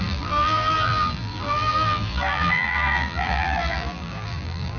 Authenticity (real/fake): fake